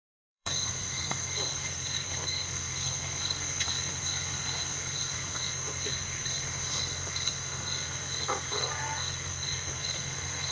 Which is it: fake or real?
fake